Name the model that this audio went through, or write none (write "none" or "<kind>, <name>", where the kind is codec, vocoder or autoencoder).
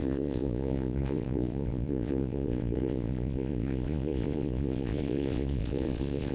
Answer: vocoder, Vocos